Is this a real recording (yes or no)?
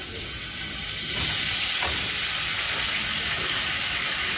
yes